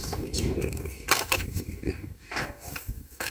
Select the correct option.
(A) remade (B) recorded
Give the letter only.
A